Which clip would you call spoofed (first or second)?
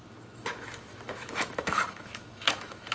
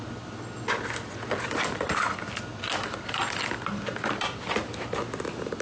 first